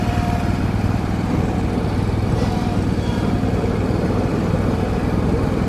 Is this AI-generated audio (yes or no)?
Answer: yes